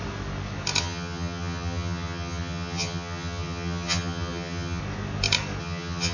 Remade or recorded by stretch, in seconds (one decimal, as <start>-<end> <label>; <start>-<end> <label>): 0.0-0.8 recorded; 0.8-4.8 remade; 4.8-5.6 recorded; 5.6-6.1 remade